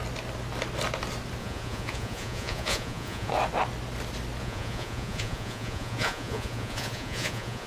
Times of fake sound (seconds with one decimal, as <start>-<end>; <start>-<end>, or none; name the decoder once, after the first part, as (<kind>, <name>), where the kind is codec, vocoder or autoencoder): 1.4-3.3 (vocoder, Vocos); 4.4-7.7